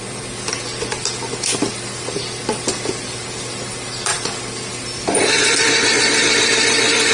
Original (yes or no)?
no